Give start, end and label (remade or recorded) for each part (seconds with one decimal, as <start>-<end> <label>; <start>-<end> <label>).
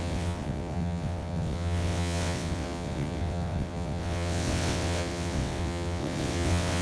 0.0-6.8 remade